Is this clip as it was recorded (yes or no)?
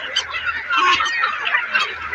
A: yes